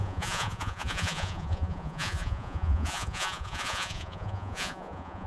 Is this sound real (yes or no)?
no